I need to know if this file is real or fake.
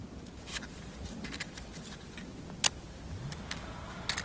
real